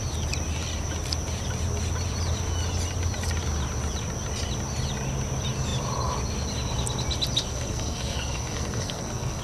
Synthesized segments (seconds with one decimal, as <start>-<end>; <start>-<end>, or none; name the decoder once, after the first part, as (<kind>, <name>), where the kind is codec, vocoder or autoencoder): 7.5-9.4 (codec, SNAC)